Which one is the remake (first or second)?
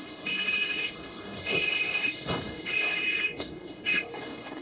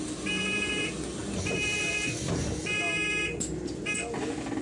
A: first